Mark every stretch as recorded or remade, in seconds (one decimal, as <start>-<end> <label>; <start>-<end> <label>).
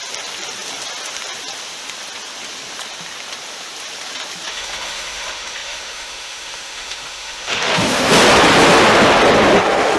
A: 0.0-4.5 recorded; 4.5-8.1 remade; 8.1-9.6 recorded; 9.6-10.0 remade